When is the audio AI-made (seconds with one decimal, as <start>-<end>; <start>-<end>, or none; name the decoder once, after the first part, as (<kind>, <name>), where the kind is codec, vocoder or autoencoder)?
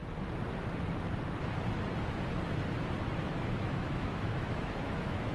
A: 3.2-5.3 (autoencoder, DAC-VAE)